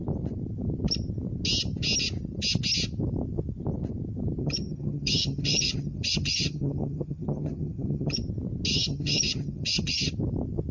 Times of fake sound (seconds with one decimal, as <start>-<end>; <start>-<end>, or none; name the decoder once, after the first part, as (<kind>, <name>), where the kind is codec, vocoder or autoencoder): 4.4-8.2 (vocoder, HiFi-GAN); 8.7-10.1